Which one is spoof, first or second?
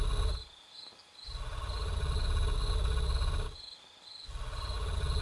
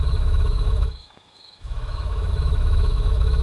second